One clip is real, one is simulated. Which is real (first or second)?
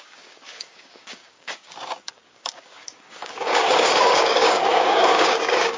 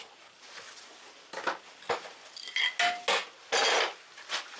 second